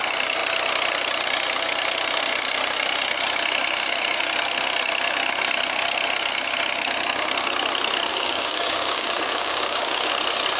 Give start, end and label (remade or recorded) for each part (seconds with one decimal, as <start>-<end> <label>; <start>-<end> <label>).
0.0-8.1 recorded; 8.1-10.1 remade; 10.1-10.6 recorded